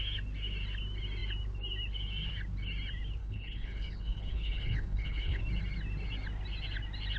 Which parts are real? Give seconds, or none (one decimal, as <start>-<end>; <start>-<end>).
0.0-3.2; 5.4-7.2